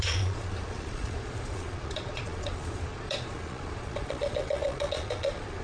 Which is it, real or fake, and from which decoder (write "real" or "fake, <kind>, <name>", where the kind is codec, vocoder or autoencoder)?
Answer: fake, vocoder, Vocos